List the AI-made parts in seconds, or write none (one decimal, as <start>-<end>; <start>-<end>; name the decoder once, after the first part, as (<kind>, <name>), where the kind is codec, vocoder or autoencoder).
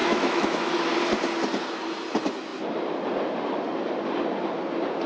0.0-0.7 (autoencoder, DAC-VAE)